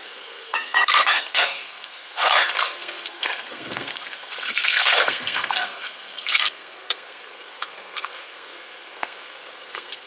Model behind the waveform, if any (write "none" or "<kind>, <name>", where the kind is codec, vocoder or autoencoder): codec, SNAC